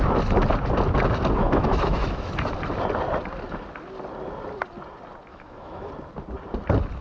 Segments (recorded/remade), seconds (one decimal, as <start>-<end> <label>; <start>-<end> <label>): 0.0-1.4 recorded; 1.4-2.3 remade; 2.3-5.3 recorded; 5.3-5.9 remade; 5.9-7.0 recorded